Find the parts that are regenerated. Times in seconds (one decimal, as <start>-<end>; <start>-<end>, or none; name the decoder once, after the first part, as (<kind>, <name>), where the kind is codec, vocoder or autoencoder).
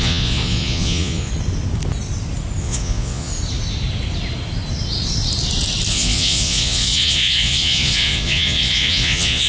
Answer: 0.0-1.3 (vocoder, Vocos); 2.6-3.3; 5.9-9.5